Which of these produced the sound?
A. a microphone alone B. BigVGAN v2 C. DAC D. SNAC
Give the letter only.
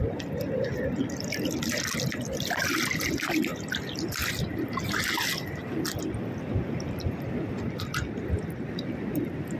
A